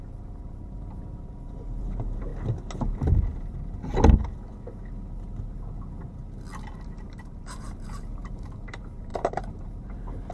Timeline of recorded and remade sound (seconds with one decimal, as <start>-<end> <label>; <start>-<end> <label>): 0.0-2.3 remade; 2.3-7.0 recorded; 7.0-10.3 remade